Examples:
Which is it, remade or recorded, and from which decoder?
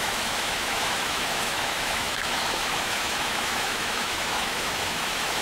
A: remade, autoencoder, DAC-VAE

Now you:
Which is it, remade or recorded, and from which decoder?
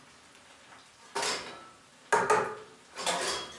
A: recorded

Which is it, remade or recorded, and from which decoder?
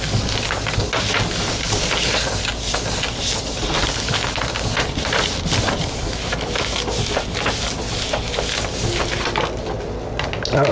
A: recorded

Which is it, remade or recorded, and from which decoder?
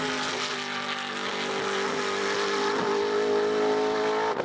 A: recorded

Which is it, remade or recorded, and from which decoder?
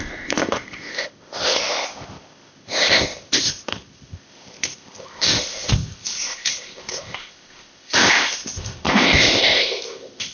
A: remade, codec, ZipCodec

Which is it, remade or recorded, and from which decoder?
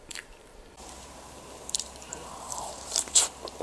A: remade, vocoder, BigVGAN v2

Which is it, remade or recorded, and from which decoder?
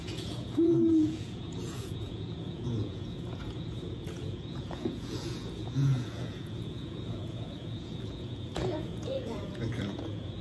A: remade, vocoder, Vocos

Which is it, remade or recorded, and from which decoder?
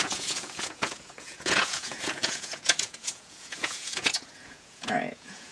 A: remade, vocoder, Vocos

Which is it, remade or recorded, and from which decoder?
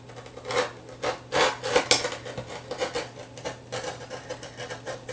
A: recorded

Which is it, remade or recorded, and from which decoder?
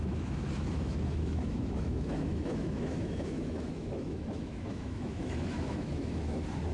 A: remade, autoencoder, DAC-VAE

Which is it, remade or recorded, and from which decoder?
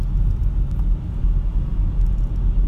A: recorded